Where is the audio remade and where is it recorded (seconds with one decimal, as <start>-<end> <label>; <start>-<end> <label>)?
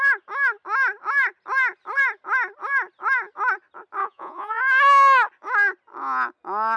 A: 0.0-4.0 recorded; 4.0-4.6 remade; 4.6-6.8 recorded